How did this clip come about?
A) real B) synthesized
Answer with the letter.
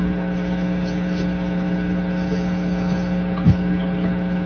B